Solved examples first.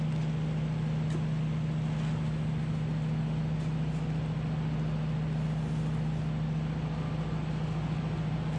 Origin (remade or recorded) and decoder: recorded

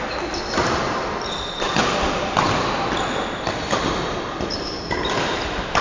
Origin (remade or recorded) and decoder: remade, vocoder, BigVGAN v2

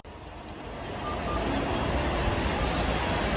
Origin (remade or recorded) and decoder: recorded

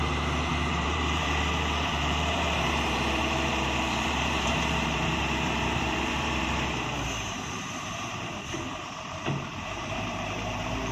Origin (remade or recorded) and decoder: remade, vocoder, BigVGAN v2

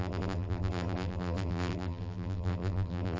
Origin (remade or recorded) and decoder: remade, vocoder, BigVGAN v2